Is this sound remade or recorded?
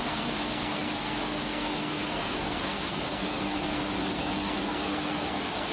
remade